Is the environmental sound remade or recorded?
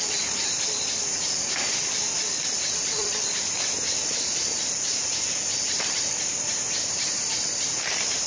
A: remade